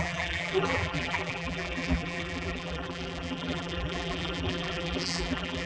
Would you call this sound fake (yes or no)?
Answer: yes